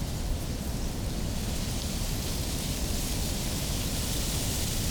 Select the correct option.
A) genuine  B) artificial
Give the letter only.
A